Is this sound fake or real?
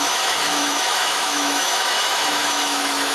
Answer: fake